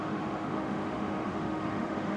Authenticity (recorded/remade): remade